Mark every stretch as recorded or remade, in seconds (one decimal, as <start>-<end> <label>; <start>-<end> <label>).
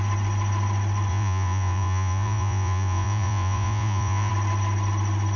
0.0-1.1 recorded; 1.1-4.3 remade; 4.3-5.4 recorded